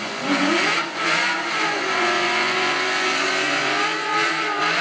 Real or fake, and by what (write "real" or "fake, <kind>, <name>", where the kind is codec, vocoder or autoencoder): fake, vocoder, Vocos